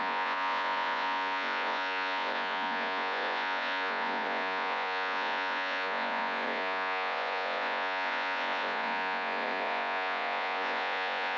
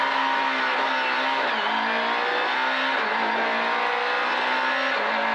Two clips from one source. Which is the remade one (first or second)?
first